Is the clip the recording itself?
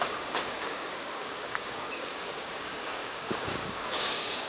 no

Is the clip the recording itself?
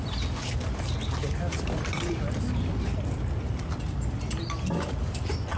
yes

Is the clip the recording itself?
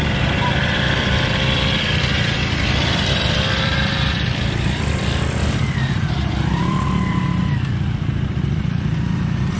no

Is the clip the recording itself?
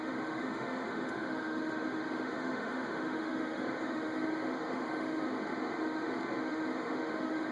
no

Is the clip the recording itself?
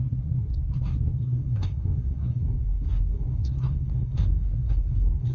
no